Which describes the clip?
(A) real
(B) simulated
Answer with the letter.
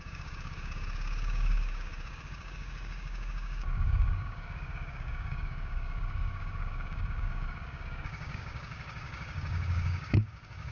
B